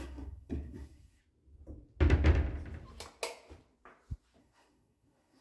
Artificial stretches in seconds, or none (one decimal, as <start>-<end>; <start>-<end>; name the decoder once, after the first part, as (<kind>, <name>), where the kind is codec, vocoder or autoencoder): 0.0-1.2 (codec, SNAC); 4.4-5.4